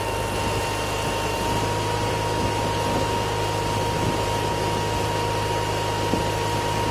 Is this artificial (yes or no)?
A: no